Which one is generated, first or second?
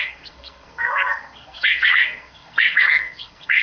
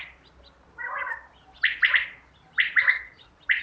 first